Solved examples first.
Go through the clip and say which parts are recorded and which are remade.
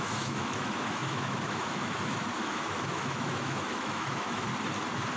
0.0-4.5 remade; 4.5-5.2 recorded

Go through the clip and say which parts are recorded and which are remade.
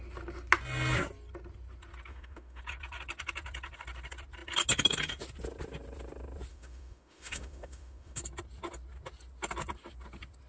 0.0-2.1 recorded; 2.1-2.6 remade; 2.6-6.5 recorded; 6.5-8.2 remade; 8.2-10.5 recorded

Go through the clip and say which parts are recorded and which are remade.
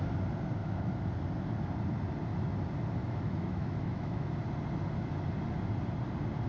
0.0-0.6 recorded; 0.6-1.1 remade; 1.1-3.0 recorded; 3.0-4.3 remade; 4.3-6.5 recorded